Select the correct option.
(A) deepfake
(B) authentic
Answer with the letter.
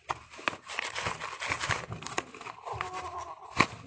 B